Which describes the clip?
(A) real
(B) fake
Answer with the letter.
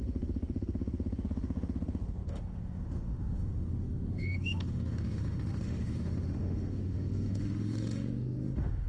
B